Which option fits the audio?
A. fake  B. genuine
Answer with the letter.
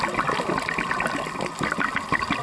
B